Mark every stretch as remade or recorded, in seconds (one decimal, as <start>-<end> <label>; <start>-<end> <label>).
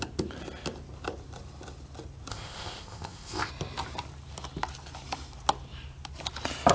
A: 0.0-2.3 recorded; 2.3-3.5 remade; 3.5-6.7 recorded